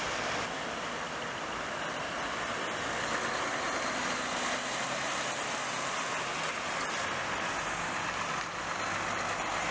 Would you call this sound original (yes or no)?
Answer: yes